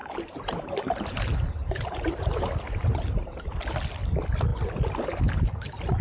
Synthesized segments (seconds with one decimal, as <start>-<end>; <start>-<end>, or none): 0.0-3.6